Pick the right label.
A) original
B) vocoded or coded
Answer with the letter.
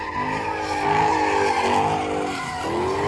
A